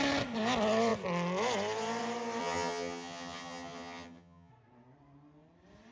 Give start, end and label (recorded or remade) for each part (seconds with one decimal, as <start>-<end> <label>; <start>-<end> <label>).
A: 0.0-2.4 recorded; 2.4-4.5 remade; 4.5-5.9 recorded